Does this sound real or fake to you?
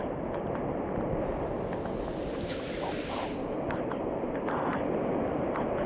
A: real